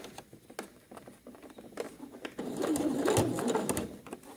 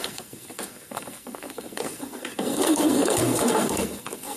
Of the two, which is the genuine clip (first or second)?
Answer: first